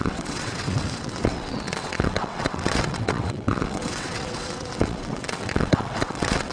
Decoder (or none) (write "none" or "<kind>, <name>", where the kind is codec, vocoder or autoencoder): vocoder, WaveNeXt